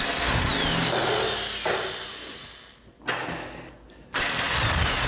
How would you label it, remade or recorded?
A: recorded